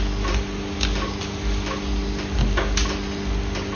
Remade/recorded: recorded